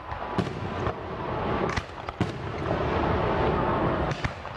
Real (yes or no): yes